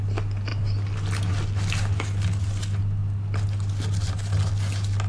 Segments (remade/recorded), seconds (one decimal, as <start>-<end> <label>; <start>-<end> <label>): 0.0-5.1 recorded